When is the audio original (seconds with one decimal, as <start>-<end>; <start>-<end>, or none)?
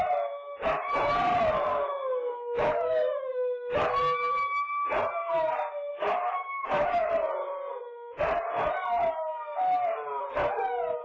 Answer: 0.0-1.7; 3.9-5.9; 7.1-11.0